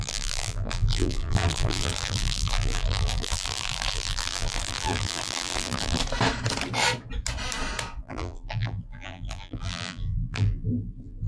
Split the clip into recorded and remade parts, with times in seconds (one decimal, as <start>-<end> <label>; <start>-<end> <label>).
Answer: 0.0-6.0 remade; 6.0-8.0 recorded; 8.0-11.3 remade